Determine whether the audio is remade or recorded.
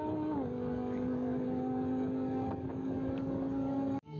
remade